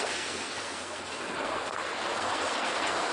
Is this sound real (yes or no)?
no